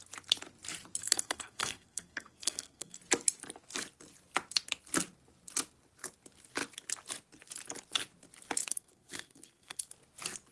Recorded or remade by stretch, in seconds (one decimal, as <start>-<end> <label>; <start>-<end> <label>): 0.0-1.0 recorded; 1.0-3.0 remade; 3.0-8.6 recorded; 8.6-9.9 remade; 9.9-10.5 recorded